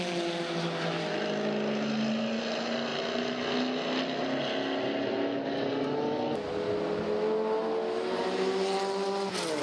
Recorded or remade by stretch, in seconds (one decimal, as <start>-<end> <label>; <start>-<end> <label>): 0.0-9.6 recorded